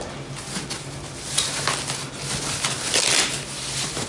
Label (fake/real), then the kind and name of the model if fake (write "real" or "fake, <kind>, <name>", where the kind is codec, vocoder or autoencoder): real